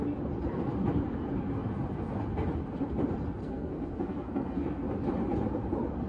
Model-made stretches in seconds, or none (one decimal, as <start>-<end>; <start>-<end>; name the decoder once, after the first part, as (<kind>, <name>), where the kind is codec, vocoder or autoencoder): 3.4-4.9 (codec, SNAC)